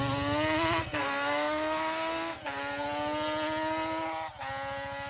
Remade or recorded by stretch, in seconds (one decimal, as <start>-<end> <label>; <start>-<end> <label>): 0.0-0.8 recorded; 0.8-2.4 remade; 2.4-5.1 recorded